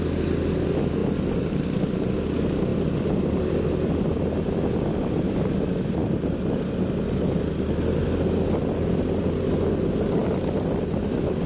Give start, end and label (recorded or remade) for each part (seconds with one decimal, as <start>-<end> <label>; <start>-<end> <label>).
0.0-2.7 recorded; 2.7-4.1 remade; 4.1-10.2 recorded; 10.2-11.0 remade; 11.0-11.5 recorded